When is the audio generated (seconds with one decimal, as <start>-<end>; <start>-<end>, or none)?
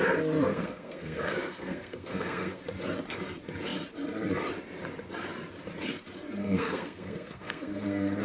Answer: 0.5-2.6; 6.4-8.2